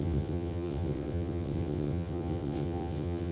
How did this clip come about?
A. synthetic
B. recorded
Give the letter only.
A